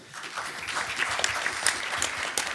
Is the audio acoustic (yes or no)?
yes